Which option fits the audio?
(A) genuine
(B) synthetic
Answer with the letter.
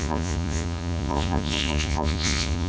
B